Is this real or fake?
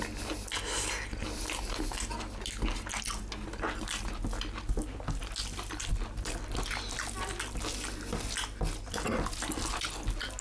real